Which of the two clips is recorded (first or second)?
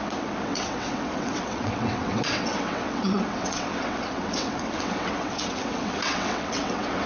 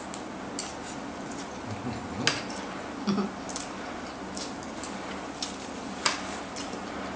second